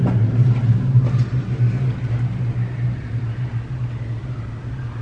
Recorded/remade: recorded